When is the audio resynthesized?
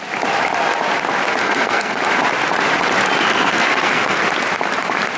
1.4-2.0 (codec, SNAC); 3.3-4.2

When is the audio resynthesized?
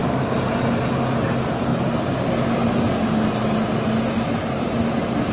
none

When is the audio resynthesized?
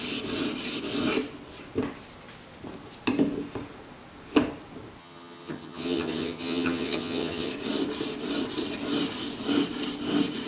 5.0-7.5 (vocoder, HiFi-GAN)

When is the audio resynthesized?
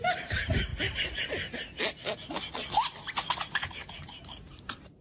0.0-0.7 (vocoder, BigVGAN v2); 3.7-5.0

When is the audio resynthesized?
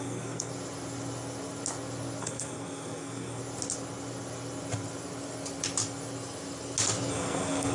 0.0-0.5 (codec, SNAC); 2.2-3.4; 7.1-7.7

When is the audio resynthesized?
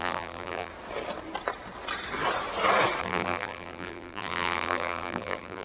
0.0-0.7 (vocoder, BigVGAN v2); 3.0-5.6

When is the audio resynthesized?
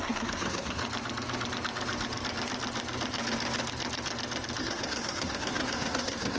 0.0-0.8 (codec, SNAC); 4.6-6.4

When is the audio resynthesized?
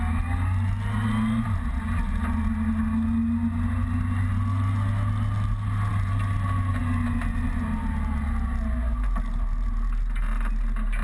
none